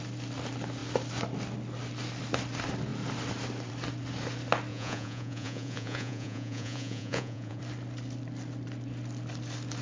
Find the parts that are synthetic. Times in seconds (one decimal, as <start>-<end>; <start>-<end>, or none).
4.7-7.6